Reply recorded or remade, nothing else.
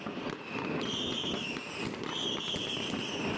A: recorded